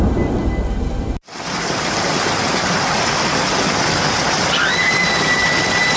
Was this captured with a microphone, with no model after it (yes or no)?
yes